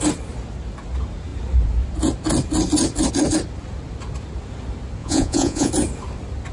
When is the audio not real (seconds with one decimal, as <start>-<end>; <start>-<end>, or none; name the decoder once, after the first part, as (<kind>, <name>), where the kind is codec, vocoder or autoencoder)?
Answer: 5.0-5.7 (vocoder, Vocos)